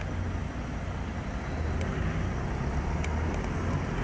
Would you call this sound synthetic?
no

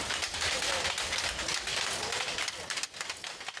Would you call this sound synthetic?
no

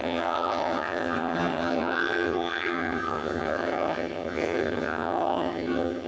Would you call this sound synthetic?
yes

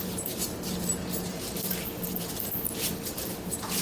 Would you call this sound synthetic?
yes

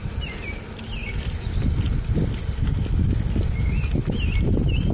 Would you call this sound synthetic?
no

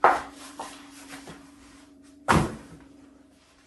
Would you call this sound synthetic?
yes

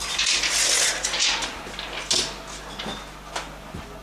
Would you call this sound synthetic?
no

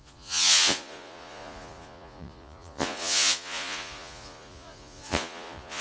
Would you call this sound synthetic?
yes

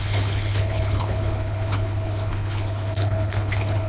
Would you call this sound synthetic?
yes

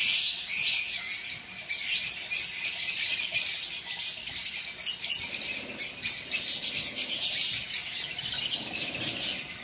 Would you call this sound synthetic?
no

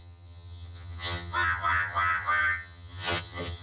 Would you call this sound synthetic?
yes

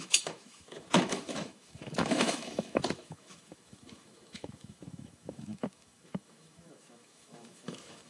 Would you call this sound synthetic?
yes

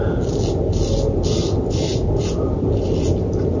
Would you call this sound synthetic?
no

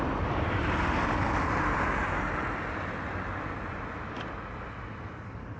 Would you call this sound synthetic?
yes